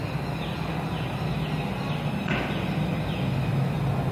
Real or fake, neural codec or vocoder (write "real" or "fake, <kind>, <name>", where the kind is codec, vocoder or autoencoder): real